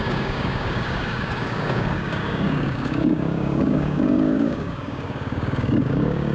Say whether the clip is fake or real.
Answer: fake